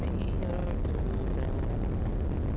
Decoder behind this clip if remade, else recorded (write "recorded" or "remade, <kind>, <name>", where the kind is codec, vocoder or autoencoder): recorded